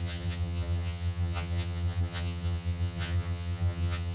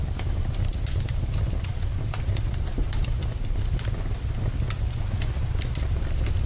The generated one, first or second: first